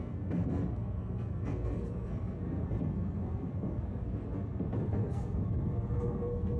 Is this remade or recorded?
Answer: remade